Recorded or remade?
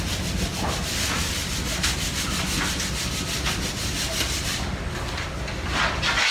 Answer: recorded